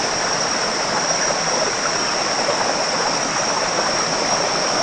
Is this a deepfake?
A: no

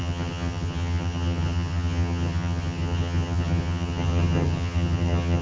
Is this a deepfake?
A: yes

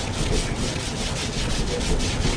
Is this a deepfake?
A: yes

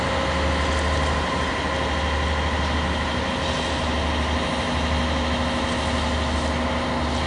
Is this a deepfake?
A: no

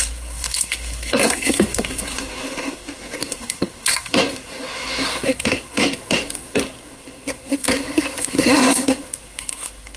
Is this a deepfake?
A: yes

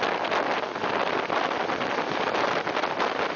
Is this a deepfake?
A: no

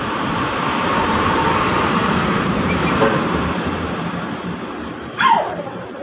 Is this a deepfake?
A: yes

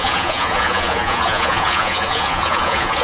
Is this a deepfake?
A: yes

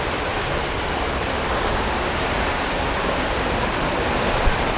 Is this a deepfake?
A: no